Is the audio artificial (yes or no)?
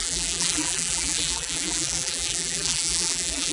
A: yes